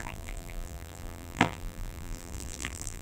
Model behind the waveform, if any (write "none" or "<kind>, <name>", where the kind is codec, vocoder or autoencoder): vocoder, BigVGAN v2